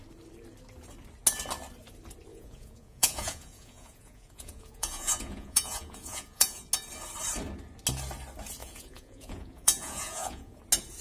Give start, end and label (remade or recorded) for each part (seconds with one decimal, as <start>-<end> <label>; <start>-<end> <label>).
0.0-2.3 recorded; 2.3-6.7 remade; 6.7-8.6 recorded; 8.6-10.6 remade; 10.6-11.0 recorded